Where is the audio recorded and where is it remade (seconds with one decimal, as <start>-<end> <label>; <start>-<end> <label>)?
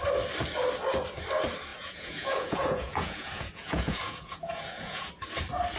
0.0-1.7 recorded; 1.7-5.1 remade; 5.1-5.8 recorded